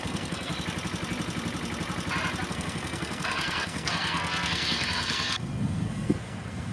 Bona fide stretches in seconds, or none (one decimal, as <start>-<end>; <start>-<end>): 0.5-2.5